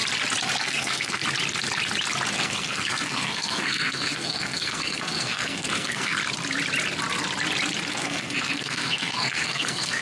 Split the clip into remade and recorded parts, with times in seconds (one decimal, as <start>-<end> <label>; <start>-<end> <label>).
0.0-0.6 recorded; 0.6-1.2 remade; 1.2-2.3 recorded; 2.3-6.2 remade; 6.2-7.9 recorded; 7.9-10.0 remade